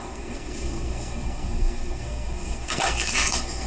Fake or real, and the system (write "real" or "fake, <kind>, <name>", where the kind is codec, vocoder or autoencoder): fake, codec, SNAC